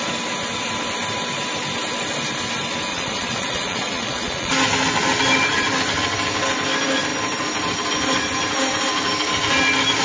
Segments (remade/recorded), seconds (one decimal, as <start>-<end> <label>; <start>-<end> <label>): 0.0-2.9 recorded; 2.9-4.5 remade; 4.5-10.0 recorded